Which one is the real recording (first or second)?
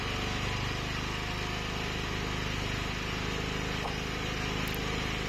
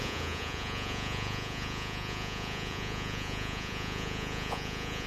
first